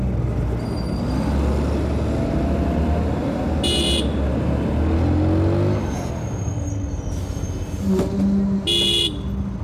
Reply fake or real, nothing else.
real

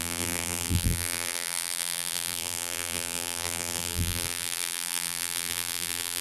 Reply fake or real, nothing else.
fake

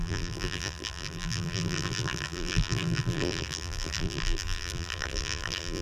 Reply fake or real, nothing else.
fake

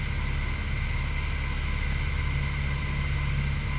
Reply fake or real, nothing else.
real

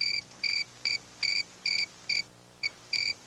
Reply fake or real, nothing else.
fake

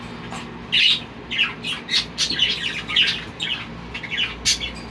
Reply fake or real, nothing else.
real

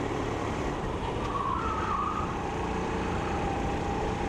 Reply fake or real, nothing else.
fake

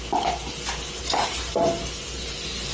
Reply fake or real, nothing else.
fake